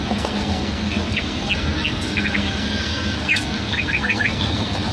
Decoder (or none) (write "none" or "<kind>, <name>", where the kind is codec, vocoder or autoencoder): codec, SNAC